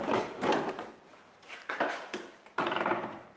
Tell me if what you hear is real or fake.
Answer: fake